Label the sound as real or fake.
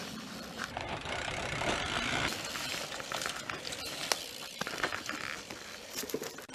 fake